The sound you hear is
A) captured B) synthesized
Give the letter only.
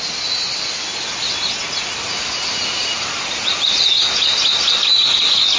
A